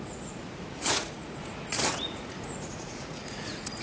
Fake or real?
fake